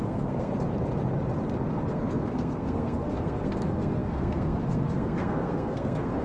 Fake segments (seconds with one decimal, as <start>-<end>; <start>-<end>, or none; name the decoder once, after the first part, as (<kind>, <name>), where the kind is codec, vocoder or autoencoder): 0.0-0.5 (codec, SNAC); 1.9-6.2